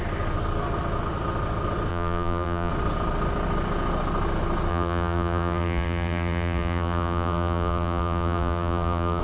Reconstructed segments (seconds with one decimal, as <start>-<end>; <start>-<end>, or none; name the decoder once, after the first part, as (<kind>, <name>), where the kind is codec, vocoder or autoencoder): 1.9-2.7 (vocoder, BigVGAN v2); 4.7-9.2